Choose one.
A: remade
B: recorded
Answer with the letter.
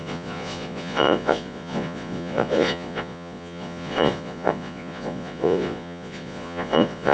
A